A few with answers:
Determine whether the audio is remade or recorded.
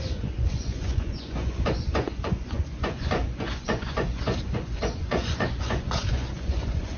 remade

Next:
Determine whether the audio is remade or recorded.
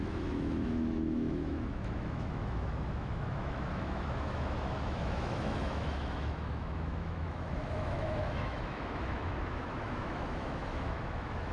remade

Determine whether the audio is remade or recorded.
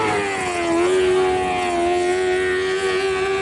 recorded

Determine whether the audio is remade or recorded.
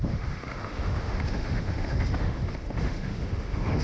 remade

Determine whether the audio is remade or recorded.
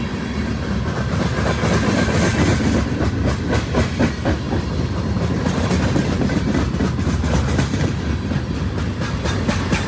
recorded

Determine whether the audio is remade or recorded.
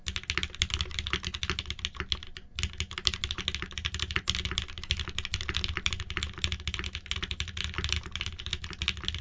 recorded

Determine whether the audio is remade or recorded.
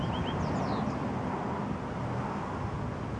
recorded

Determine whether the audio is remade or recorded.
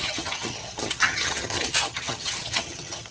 remade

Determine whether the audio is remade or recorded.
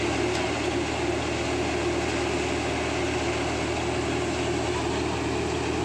recorded